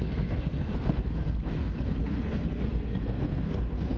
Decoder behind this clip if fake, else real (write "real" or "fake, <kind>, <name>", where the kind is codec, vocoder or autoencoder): fake, codec, SNAC